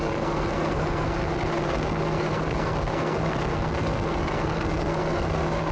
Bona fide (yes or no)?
no